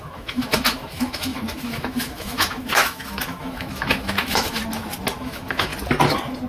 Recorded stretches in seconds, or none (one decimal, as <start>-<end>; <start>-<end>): 4.6-5.2; 5.7-6.5